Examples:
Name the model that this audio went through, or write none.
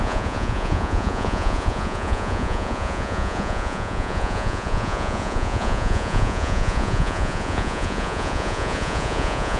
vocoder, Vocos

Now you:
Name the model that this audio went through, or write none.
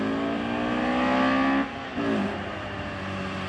none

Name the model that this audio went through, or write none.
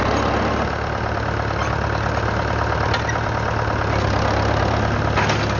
none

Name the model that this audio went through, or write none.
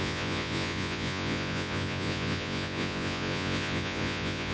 vocoder, Vocos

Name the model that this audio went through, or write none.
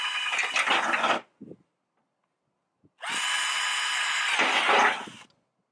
none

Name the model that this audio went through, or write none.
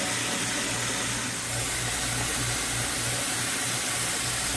none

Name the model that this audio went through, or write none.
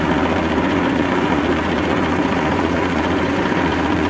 vocoder, Vocos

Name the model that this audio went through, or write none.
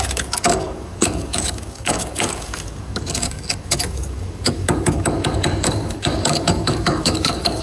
codec, DAC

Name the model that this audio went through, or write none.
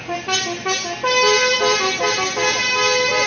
none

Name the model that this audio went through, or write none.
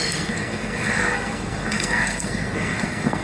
codec, SNAC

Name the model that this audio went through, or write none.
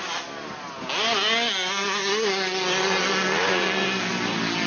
none